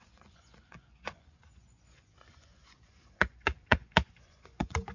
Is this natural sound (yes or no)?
no